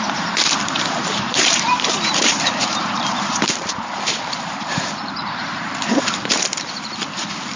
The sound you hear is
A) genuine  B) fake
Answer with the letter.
B